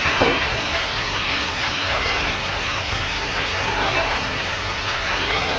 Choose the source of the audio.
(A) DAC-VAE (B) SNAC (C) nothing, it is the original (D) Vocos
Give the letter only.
B